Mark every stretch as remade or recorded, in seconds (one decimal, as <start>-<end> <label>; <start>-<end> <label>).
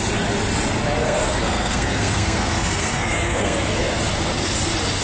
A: 0.0-1.0 recorded; 1.0-4.0 remade; 4.0-5.0 recorded